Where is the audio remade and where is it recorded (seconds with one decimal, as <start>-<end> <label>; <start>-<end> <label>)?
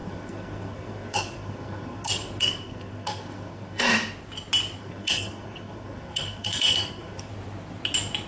0.0-3.9 remade; 3.9-4.8 recorded; 4.8-7.3 remade; 7.3-8.3 recorded